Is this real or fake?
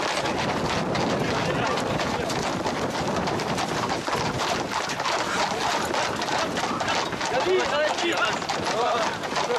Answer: real